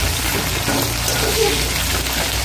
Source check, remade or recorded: recorded